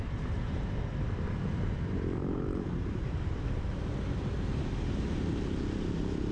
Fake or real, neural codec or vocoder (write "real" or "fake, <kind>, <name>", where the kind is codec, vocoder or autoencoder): fake, vocoder, BigVGAN v2